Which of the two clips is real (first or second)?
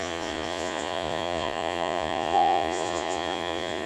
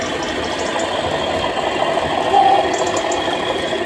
second